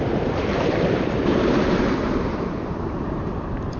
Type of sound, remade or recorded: remade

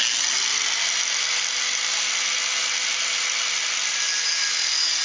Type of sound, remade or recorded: recorded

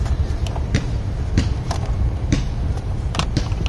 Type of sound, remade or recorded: remade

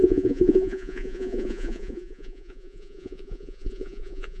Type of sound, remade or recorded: remade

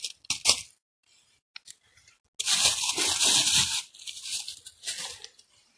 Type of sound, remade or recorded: recorded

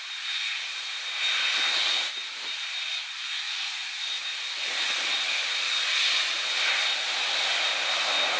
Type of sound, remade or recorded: recorded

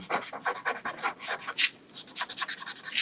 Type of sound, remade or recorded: recorded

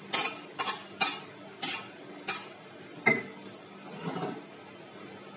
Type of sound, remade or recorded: recorded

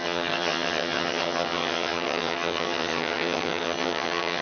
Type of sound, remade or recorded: remade